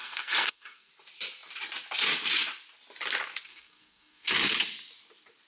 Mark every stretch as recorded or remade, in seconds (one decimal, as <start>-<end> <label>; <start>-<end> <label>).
0.0-0.9 remade; 0.9-3.5 recorded; 3.5-4.3 remade; 4.3-5.5 recorded